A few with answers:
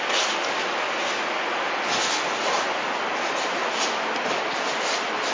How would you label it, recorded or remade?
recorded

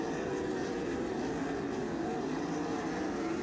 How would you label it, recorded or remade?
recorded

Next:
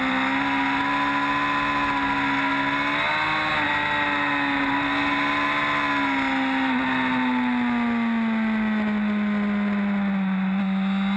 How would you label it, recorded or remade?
recorded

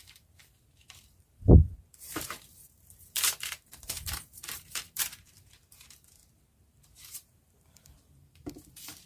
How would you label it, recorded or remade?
remade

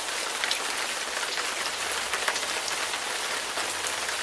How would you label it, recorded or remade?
recorded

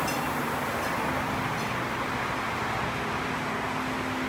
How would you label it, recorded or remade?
recorded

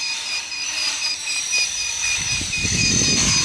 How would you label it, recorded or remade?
remade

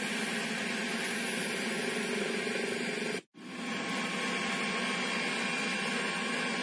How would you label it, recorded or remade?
recorded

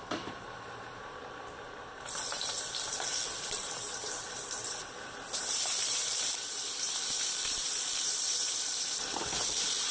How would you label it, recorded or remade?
remade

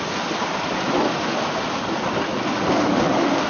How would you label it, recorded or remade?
recorded